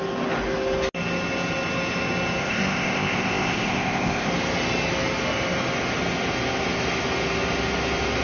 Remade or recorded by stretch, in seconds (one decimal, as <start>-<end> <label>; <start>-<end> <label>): 0.0-2.4 recorded; 2.4-4.3 remade; 4.3-8.2 recorded